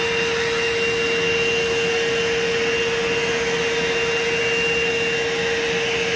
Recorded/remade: recorded